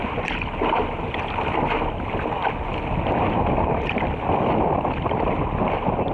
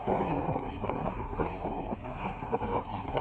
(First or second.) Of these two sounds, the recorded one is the first